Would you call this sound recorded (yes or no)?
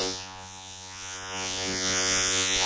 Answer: no